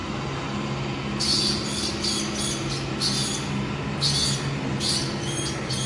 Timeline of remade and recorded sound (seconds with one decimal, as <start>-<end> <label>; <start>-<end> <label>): 0.0-5.9 recorded

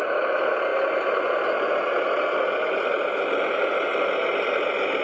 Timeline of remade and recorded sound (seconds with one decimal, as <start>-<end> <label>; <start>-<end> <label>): 0.0-5.0 recorded

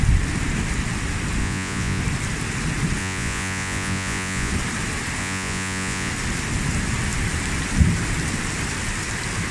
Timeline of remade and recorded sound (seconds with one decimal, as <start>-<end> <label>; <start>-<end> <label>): 0.0-1.4 recorded; 1.4-2.0 remade; 2.0-3.0 recorded; 3.0-4.5 remade; 4.5-5.2 recorded; 5.2-6.1 remade; 6.1-9.5 recorded

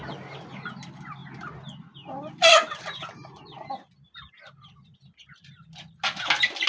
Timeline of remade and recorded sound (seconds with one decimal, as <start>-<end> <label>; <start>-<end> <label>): 0.0-1.2 recorded; 1.2-4.3 remade; 4.3-6.7 recorded

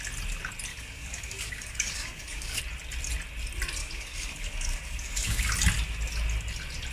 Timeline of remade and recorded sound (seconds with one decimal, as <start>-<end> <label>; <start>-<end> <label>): 0.0-0.7 recorded; 0.7-2.6 remade; 2.6-3.8 recorded; 3.8-5.5 remade; 5.5-6.9 recorded

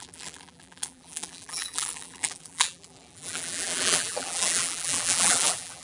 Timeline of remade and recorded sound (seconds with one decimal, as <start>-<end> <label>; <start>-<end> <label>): 0.0-5.8 remade